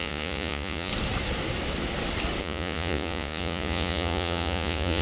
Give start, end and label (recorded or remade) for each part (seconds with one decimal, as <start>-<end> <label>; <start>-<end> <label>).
0.0-0.9 remade; 0.9-2.4 recorded; 2.4-5.0 remade